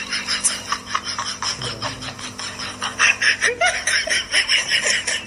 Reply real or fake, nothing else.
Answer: real